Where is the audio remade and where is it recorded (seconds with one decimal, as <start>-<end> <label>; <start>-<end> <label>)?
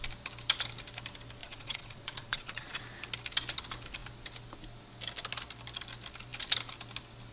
0.0-1.4 recorded; 1.4-2.8 remade; 2.8-7.3 recorded